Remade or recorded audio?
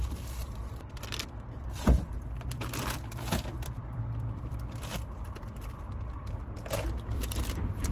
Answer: remade